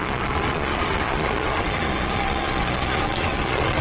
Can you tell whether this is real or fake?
fake